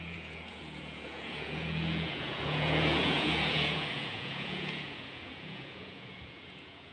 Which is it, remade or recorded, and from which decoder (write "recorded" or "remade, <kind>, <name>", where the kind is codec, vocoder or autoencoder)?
remade, vocoder, Vocos